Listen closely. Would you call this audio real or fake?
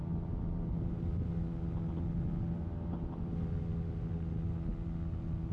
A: real